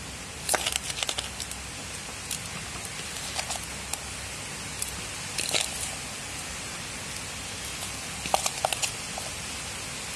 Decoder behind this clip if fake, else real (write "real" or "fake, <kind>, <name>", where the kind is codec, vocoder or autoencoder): real